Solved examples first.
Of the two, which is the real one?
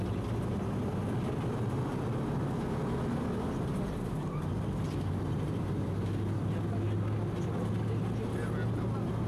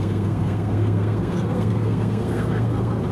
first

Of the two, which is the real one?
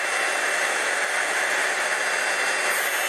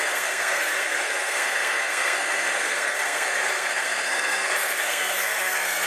first